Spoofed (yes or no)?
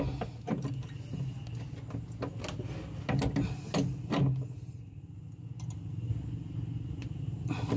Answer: no